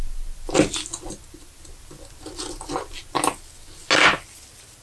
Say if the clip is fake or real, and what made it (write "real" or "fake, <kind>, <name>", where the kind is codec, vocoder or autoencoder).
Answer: real